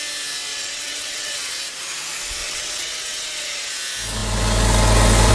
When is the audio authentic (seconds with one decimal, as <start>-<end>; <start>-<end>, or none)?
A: 0.0-0.5; 1.6-2.4; 3.7-5.3